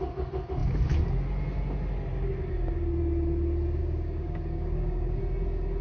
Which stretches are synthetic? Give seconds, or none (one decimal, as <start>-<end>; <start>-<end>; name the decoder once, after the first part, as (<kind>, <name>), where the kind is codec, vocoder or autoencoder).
3.8-5.2 (codec, DAC)